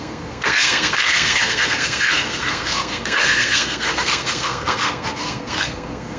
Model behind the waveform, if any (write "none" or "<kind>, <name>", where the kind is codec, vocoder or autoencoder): codec, SNAC